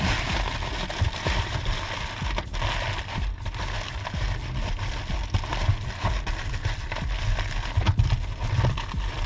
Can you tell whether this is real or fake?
real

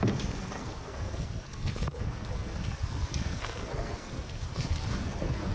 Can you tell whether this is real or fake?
fake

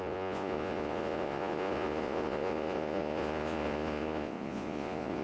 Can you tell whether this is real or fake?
fake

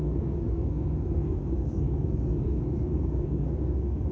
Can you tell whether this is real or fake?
fake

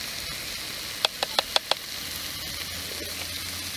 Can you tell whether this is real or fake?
real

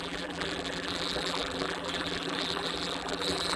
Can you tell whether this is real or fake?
fake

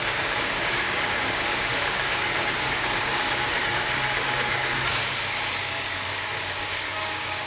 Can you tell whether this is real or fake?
fake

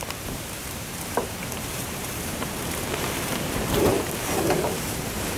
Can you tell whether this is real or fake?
fake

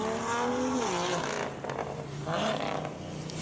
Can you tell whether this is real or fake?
real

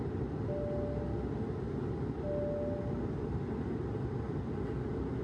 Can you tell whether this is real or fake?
real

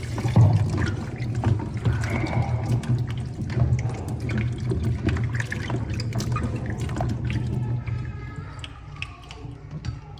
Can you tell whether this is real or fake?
real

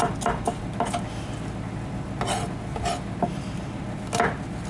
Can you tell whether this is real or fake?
real